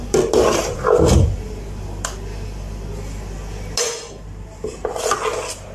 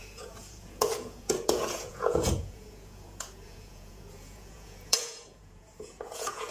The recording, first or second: first